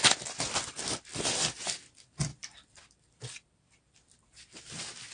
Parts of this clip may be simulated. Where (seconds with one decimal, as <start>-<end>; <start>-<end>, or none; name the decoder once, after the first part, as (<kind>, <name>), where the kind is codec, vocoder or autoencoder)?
1.1-1.6 (vocoder, BigVGAN v2); 2.3-4.6

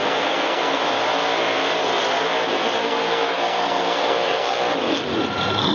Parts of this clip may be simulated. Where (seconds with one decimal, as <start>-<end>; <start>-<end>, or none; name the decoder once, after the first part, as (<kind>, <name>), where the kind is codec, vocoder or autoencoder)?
0.0-0.8 (codec, SNAC); 2.8-4.6